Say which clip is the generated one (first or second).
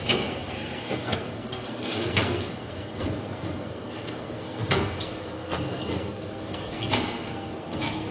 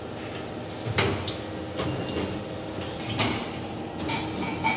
first